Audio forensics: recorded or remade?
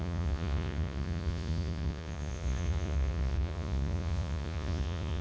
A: remade